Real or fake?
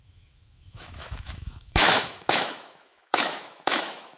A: fake